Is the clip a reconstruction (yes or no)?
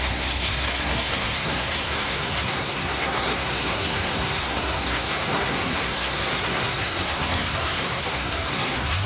yes